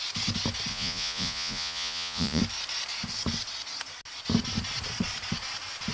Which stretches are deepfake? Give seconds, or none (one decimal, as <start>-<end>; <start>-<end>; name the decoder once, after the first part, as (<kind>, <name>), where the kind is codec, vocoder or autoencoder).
0.7-2.4 (vocoder, Vocos)